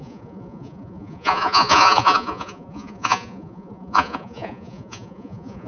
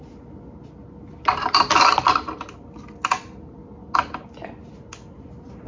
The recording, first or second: second